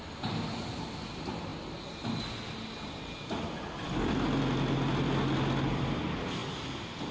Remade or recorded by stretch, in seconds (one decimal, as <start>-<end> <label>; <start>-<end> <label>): 0.0-7.1 recorded